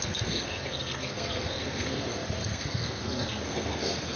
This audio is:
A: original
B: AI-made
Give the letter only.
B